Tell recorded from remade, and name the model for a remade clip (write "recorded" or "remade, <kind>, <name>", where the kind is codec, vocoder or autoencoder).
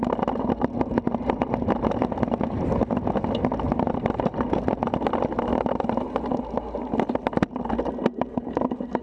recorded